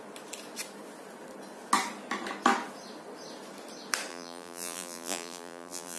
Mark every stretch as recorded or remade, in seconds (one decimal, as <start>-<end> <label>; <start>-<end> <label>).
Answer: 0.0-4.1 recorded; 4.1-6.0 remade